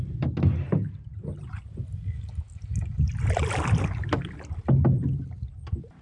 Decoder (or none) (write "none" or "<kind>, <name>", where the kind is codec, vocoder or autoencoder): none